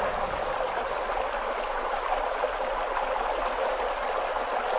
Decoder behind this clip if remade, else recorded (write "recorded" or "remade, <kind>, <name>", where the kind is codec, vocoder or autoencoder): recorded